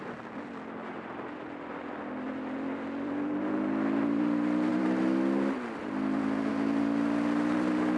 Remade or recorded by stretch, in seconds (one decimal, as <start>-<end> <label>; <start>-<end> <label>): 0.0-8.0 recorded